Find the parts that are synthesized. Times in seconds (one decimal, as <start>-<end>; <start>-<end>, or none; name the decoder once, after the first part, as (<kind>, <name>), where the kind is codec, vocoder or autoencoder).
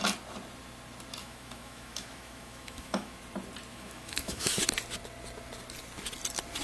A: 1.2-3.2 (autoencoder, DAC-VAE); 3.7-4.6